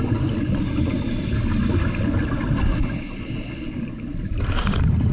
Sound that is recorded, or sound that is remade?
recorded